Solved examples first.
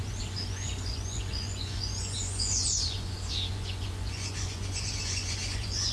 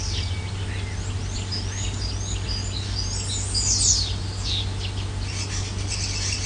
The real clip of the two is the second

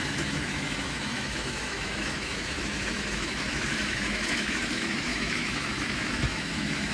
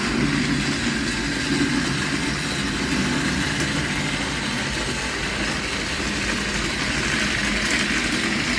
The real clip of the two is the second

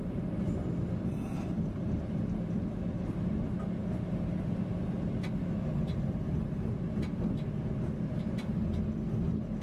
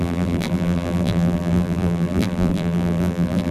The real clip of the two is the first